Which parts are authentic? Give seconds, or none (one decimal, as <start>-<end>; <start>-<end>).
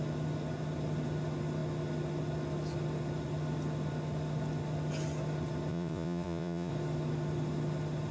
0.0-5.7; 6.7-8.1